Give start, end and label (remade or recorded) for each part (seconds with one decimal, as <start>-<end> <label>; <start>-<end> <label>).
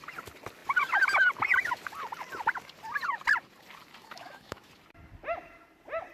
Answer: 0.0-4.0 recorded; 4.0-4.7 remade; 4.7-6.1 recorded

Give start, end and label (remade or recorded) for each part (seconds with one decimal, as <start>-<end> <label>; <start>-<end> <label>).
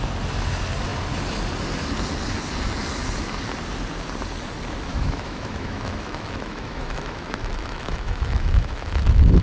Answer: 0.0-4.9 recorded; 4.9-9.4 remade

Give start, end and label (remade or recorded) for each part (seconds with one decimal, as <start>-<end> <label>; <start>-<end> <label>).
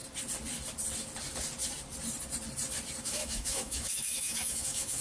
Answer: 0.0-3.0 recorded; 3.0-5.0 remade